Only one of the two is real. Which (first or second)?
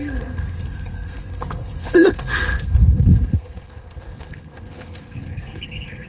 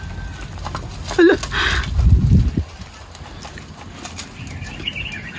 second